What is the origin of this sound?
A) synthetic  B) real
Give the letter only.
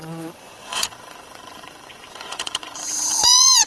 A